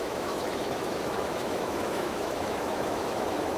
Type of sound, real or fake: fake